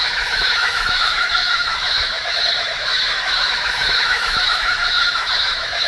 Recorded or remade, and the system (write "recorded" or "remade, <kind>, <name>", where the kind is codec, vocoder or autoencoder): remade, autoencoder, DAC-VAE